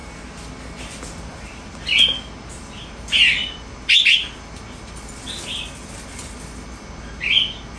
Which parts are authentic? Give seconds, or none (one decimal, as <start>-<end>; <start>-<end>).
0.0-7.8